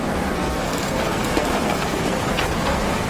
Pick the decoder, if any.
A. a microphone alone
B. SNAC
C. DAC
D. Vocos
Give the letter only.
B